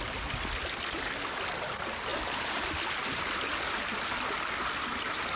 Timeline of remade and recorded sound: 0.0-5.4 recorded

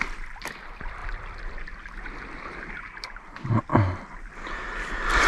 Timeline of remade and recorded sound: 0.0-5.3 recorded

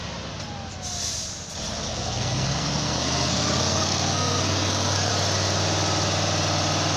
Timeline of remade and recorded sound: 0.0-1.9 recorded; 1.9-5.1 remade; 5.1-7.0 recorded

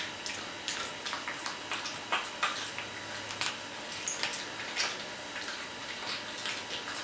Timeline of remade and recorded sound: 0.0-7.0 recorded

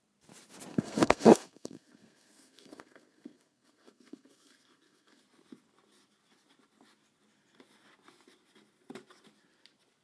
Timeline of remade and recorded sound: 0.0-0.7 recorded; 0.7-5.2 remade; 5.2-10.0 recorded

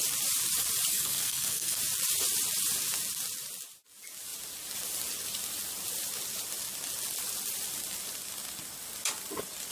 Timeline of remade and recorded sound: 0.0-0.9 recorded; 0.9-1.8 remade; 1.8-9.7 recorded

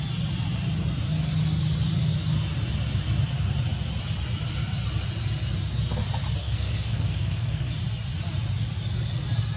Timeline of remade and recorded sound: 0.0-6.4 recorded; 6.4-7.6 remade; 7.6-9.6 recorded

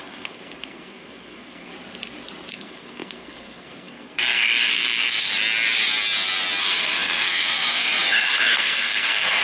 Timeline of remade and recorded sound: 0.0-1.7 remade; 1.7-2.5 recorded; 2.5-5.3 remade; 5.3-6.6 recorded; 6.6-9.4 remade